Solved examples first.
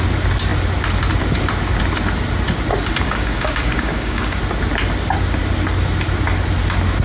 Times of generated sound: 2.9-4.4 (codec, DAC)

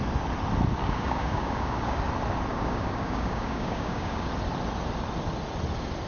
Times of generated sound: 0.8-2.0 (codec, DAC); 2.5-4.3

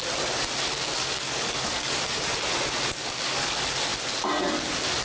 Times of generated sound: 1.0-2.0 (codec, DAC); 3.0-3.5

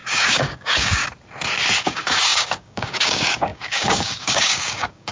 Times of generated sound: 0.0-1.0 (codec, DAC); 1.8-5.1